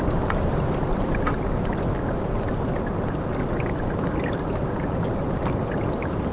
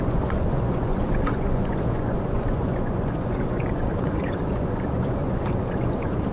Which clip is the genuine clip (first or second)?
first